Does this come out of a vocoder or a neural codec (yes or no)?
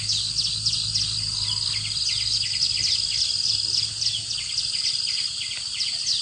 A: no